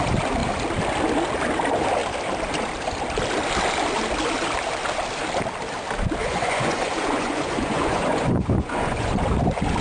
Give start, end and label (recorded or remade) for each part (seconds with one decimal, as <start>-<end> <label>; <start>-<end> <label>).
0.0-6.2 recorded; 6.2-9.1 remade; 9.1-9.8 recorded